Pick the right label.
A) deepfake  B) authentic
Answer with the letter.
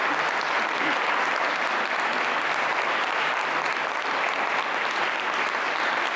B